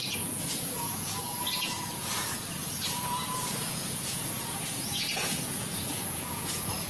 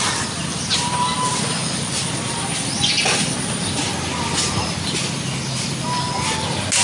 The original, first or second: second